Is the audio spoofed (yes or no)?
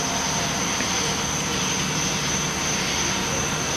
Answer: no